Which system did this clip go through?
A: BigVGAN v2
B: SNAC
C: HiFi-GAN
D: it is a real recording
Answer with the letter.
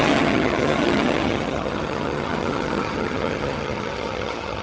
C